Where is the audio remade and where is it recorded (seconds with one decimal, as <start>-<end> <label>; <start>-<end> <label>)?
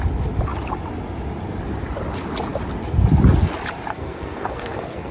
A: 0.0-3.9 recorded; 3.9-5.1 remade